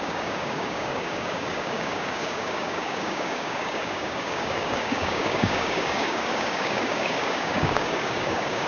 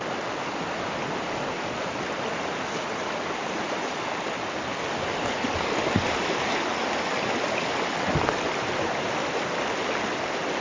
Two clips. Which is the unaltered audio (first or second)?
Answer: second